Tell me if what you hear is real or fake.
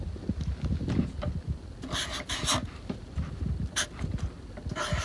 real